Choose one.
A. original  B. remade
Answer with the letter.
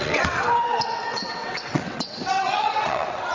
B